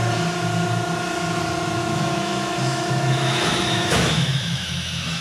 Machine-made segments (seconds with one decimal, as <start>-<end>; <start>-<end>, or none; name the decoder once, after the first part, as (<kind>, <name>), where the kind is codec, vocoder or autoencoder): 1.8-5.2 (autoencoder, DAC-VAE)